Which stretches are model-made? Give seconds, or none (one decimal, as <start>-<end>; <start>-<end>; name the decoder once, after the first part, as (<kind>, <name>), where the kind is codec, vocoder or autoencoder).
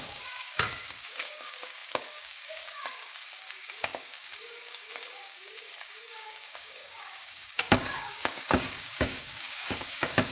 0.0-10.3 (codec, DAC)